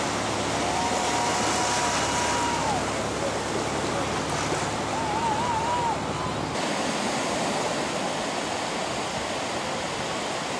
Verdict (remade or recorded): recorded